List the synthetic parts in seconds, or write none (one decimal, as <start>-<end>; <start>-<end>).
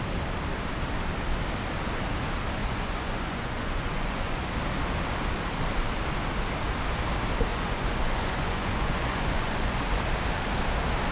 2.6-4.5; 7.5-10.0